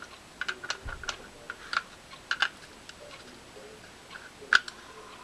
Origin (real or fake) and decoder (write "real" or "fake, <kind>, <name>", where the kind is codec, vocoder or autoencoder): real